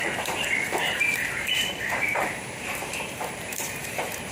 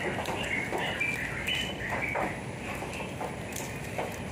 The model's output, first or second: first